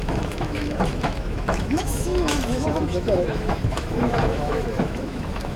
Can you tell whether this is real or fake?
fake